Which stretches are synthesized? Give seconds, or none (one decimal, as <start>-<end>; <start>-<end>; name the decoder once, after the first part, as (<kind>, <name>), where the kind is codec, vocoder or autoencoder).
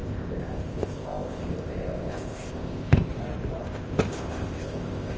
0.0-3.1 (codec, ZipCodec); 3.6-5.2